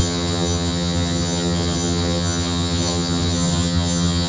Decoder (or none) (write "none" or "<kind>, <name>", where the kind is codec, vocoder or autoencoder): vocoder, HiFi-GAN